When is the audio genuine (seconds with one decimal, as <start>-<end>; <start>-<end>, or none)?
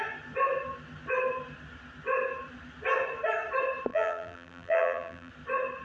0.0-3.9; 5.3-5.8